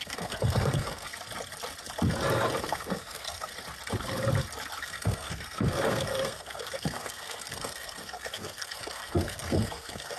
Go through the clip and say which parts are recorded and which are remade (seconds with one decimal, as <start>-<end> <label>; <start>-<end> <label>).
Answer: 0.0-1.1 remade; 1.1-2.6 recorded; 2.6-3.5 remade; 3.5-4.8 recorded; 4.8-10.2 remade